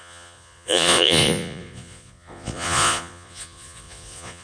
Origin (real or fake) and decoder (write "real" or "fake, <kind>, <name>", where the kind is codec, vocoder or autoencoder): fake, vocoder, Vocos